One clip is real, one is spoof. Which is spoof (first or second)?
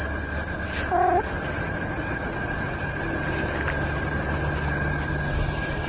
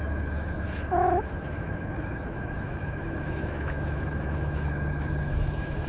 second